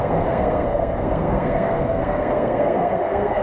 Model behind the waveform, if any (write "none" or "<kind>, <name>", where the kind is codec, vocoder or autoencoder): codec, SNAC